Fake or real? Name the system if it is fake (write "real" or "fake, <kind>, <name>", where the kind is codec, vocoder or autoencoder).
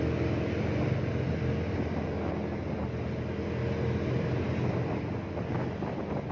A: real